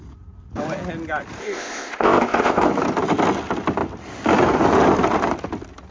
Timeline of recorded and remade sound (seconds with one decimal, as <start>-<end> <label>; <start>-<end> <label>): 0.0-1.4 recorded; 1.4-2.7 remade; 2.7-5.9 recorded